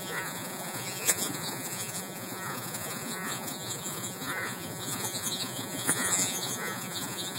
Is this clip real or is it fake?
fake